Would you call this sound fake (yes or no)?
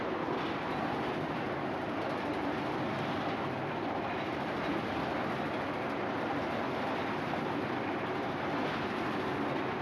no